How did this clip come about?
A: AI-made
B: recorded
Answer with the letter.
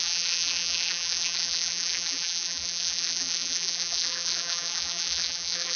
A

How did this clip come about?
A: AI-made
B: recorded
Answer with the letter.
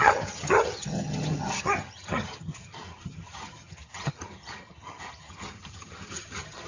A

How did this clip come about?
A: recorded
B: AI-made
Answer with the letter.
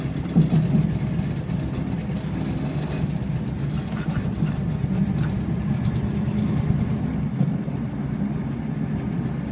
A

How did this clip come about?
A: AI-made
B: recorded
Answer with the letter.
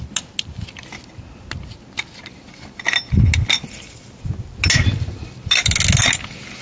B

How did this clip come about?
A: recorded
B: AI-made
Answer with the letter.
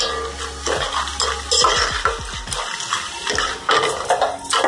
A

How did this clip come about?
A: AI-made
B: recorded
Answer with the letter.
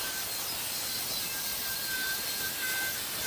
B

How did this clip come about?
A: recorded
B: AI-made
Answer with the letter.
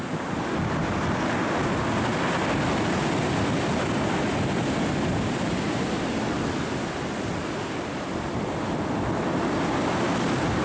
A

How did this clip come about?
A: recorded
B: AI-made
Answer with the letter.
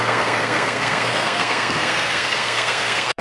B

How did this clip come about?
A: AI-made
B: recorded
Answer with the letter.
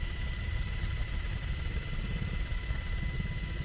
B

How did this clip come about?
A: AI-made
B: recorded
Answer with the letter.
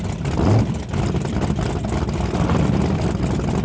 B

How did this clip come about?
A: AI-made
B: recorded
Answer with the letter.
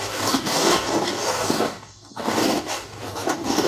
A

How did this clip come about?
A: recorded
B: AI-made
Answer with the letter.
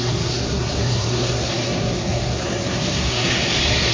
B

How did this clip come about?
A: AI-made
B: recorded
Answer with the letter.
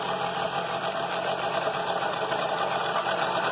B